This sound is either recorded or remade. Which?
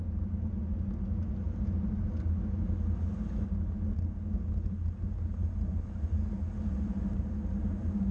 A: recorded